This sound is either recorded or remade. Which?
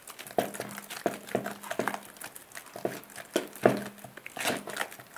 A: recorded